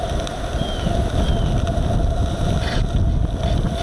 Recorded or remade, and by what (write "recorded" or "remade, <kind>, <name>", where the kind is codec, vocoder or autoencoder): recorded